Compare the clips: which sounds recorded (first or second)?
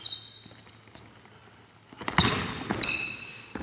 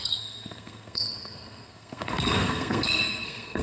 first